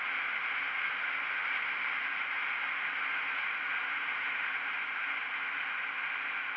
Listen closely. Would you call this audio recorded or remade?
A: recorded